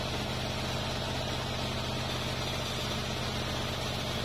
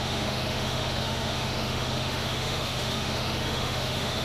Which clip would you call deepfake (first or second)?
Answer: second